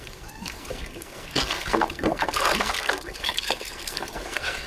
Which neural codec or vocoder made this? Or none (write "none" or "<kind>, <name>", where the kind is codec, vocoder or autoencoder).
codec, SNAC